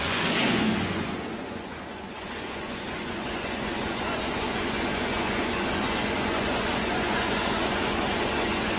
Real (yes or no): no